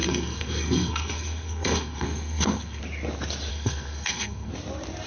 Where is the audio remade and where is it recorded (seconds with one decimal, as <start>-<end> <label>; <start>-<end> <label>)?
0.0-2.8 remade; 2.8-3.5 recorded; 3.5-4.5 remade; 4.5-5.1 recorded